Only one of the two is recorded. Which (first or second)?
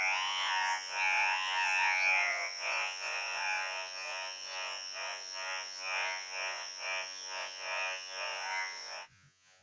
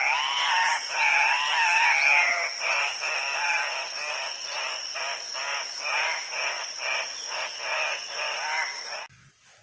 second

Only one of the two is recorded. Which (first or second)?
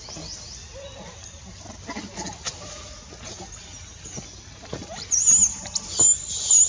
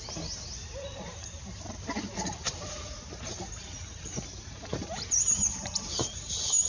first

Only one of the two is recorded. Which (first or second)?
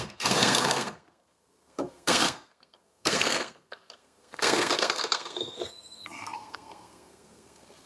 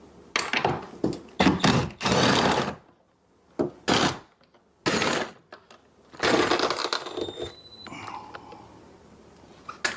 second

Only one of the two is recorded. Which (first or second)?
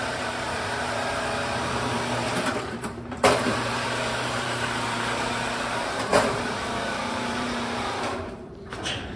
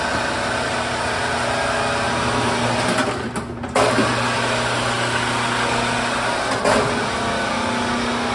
second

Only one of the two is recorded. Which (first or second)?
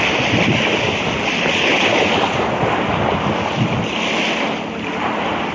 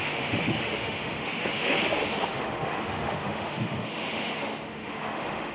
first